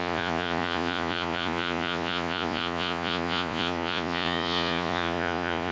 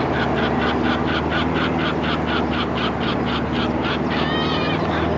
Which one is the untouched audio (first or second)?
second